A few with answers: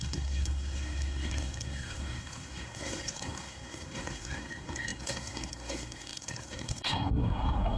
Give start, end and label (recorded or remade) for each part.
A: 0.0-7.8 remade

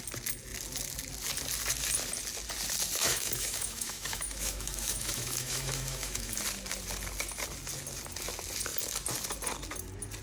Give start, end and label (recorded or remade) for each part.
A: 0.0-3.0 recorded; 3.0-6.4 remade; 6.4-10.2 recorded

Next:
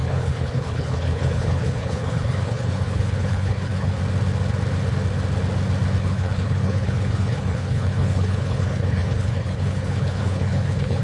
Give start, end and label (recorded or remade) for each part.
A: 0.0-4.0 remade; 4.0-6.0 recorded; 6.0-11.0 remade

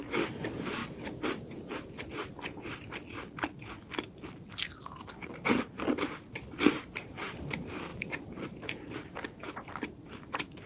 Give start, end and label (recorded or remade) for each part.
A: 0.0-0.8 remade; 0.8-5.1 recorded; 5.1-10.7 remade

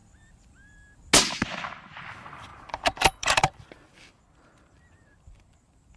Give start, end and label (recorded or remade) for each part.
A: 0.0-1.3 recorded; 1.3-6.0 remade

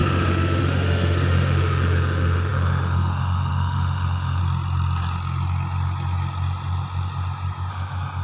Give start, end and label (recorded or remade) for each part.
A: 0.0-4.4 remade; 4.4-7.7 recorded; 7.7-8.2 remade

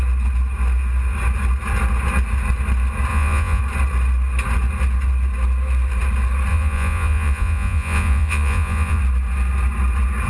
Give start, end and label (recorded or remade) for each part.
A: 0.0-3.1 recorded; 3.1-3.6 remade; 3.6-6.5 recorded; 6.5-9.0 remade; 9.0-10.3 recorded